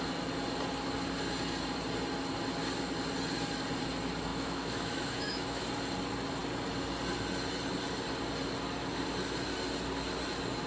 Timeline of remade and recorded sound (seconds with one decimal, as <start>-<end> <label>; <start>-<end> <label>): 0.0-4.3 recorded; 4.3-5.6 remade; 5.6-10.7 recorded